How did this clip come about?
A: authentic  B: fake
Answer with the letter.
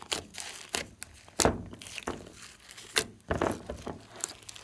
A